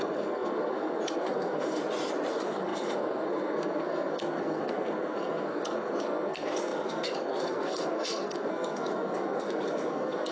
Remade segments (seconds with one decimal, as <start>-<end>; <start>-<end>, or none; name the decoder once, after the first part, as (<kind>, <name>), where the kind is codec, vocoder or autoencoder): 0.0-1.8 (codec, SNAC); 2.3-10.3